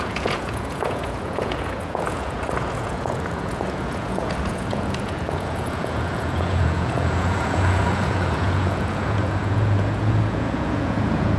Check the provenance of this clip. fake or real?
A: fake